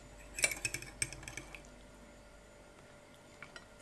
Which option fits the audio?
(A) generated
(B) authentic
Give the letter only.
B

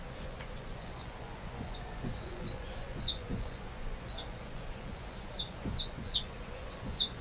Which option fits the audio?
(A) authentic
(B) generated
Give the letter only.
B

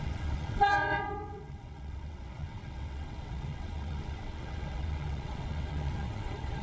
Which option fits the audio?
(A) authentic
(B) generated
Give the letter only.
B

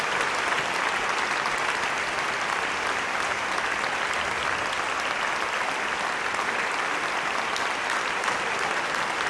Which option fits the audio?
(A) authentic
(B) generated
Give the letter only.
A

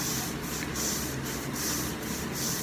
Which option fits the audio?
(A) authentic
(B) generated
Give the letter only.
A